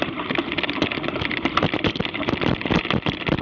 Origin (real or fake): real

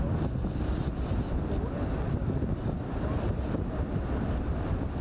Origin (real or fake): real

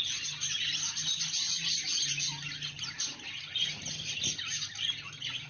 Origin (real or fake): real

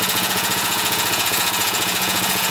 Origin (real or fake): fake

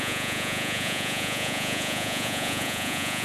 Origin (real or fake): fake